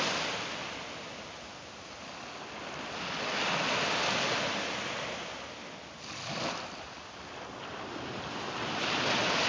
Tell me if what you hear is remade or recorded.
recorded